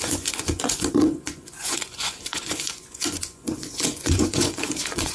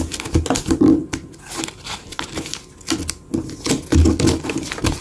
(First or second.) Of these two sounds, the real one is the second